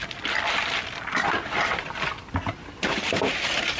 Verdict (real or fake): real